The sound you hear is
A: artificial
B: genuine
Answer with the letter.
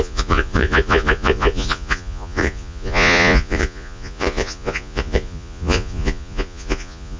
A